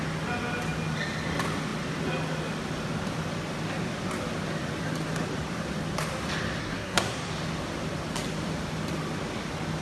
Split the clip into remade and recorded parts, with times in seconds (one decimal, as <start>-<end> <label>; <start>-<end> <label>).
0.0-6.6 recorded; 6.6-7.3 remade; 7.3-9.8 recorded